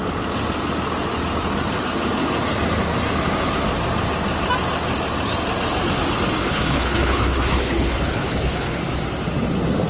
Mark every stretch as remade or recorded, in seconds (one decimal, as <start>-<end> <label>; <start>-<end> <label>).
0.0-6.4 recorded; 6.4-8.8 remade; 8.8-9.9 recorded